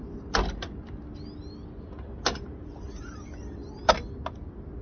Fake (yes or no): no